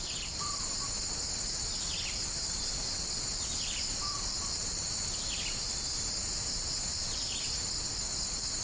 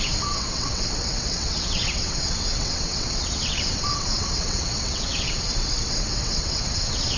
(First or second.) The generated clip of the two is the second